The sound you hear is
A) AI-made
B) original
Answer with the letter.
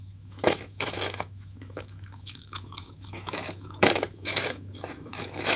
A